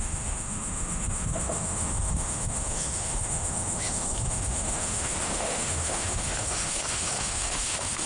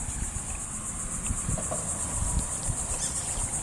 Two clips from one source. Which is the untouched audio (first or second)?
second